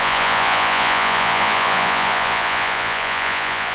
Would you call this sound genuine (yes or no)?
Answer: no